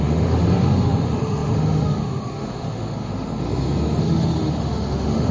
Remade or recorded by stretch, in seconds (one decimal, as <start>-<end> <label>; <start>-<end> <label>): 0.0-3.1 remade; 3.1-4.0 recorded; 4.0-5.3 remade